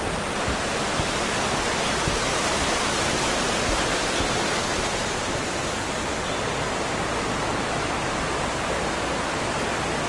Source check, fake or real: real